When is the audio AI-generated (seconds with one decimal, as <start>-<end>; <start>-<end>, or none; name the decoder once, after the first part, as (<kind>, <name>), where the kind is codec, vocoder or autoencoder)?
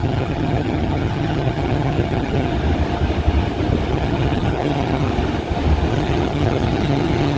0.0-2.5 (vocoder, HiFi-GAN); 3.9-5.1; 5.9-7.4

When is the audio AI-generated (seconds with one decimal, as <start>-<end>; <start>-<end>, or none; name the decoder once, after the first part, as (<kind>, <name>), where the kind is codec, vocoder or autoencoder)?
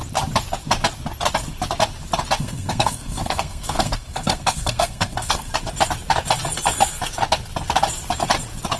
2.4-5.5 (codec, SNAC)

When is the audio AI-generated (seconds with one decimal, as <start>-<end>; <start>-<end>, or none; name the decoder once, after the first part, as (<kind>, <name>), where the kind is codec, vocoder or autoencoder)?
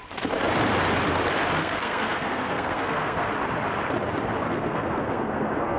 1.6-3.3 (codec, SNAC); 4.4-5.8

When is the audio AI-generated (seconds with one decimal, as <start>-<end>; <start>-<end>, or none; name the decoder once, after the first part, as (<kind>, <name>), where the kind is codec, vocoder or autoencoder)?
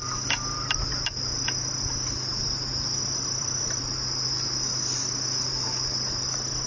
3.0-3.8 (vocoder, BigVGAN v2)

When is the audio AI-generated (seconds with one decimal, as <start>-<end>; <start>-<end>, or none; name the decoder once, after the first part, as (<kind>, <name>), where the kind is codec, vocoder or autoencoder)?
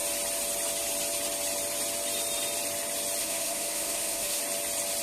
3.2-4.4 (autoencoder, DAC-VAE)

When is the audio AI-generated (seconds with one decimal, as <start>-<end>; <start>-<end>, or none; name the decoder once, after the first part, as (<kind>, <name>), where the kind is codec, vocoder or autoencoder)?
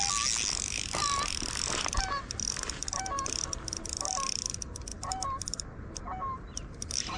none